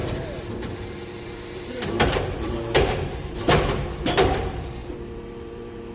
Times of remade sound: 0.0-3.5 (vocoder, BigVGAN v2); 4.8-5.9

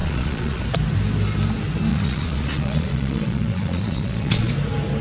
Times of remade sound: 0.0-0.6 (vocoder, Vocos); 1.9-4.5

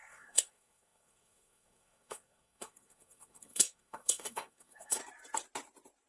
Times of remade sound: 0.0-5.0 (codec, SNAC)